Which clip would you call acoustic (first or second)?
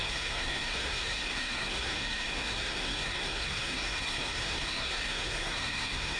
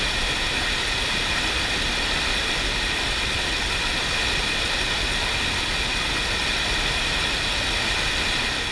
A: second